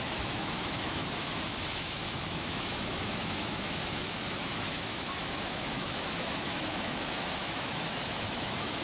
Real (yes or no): no